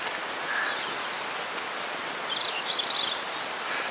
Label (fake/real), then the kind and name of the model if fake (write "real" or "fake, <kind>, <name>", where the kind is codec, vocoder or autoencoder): real